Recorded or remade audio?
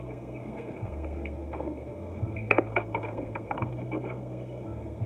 remade